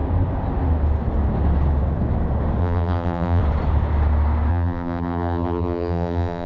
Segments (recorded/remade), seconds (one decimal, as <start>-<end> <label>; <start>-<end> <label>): 0.0-2.6 recorded; 2.6-3.4 remade; 3.4-4.5 recorded; 4.5-6.5 remade